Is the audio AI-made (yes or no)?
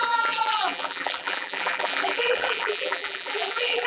yes